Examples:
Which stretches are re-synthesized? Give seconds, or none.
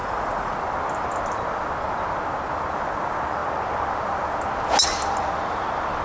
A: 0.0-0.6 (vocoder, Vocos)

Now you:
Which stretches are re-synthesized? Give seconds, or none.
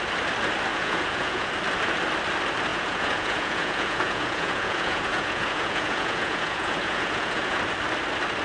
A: 0.7-1.5 (vocoder, Vocos); 2.7-7.6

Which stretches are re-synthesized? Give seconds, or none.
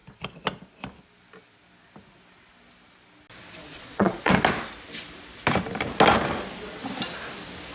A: 3.6-4.3 (vocoder, Vocos)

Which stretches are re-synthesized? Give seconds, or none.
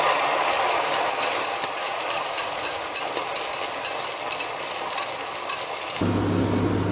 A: 1.9-3.0 (vocoder, Vocos)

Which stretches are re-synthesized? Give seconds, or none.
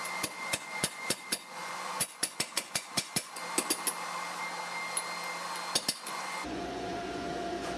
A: 0.0-3.4 (vocoder, Vocos); 6.1-7.8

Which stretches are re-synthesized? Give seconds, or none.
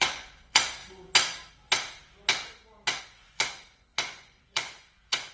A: 0.0-0.8 (vocoder, Vocos); 3.0-5.3